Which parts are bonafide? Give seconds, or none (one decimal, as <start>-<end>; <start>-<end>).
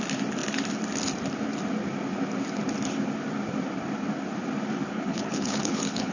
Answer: 0.0-4.9